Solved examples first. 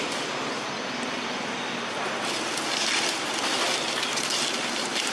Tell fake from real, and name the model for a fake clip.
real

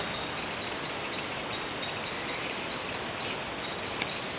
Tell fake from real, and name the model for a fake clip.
real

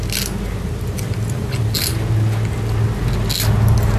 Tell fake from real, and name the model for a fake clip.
real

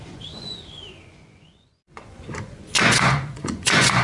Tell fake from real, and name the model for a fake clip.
fake, vocoder, Vocos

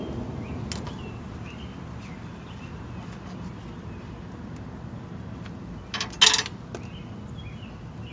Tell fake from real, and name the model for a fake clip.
real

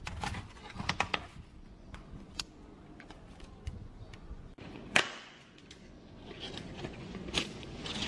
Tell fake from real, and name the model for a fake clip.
fake, vocoder, Vocos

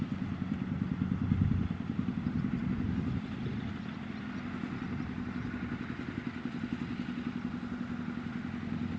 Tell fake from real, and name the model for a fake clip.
real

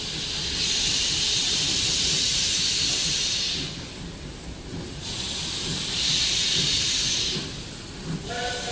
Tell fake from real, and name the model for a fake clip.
real